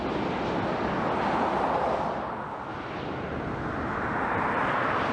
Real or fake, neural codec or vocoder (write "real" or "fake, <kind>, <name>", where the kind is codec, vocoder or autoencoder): real